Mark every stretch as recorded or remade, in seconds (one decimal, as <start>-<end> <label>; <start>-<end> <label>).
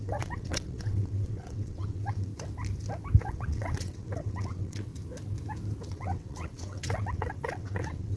0.0-2.3 remade; 2.3-3.2 recorded; 3.2-4.9 remade; 4.9-5.9 recorded; 5.9-8.2 remade